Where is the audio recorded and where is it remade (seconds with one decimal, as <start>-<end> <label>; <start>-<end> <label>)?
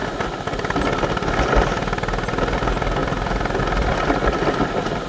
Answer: 0.0-3.0 recorded; 3.0-3.6 remade; 3.6-5.1 recorded